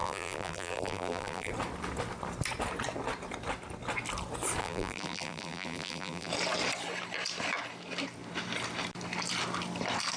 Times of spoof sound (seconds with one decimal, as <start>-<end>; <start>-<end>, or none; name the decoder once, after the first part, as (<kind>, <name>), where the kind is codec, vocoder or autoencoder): 0.0-1.5 (vocoder, BigVGAN v2); 4.6-6.3